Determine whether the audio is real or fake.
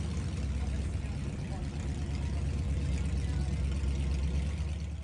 real